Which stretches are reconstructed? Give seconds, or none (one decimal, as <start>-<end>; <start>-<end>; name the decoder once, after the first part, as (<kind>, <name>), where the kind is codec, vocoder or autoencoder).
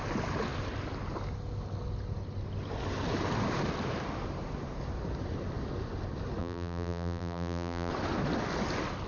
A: 6.4-7.9 (vocoder, BigVGAN v2)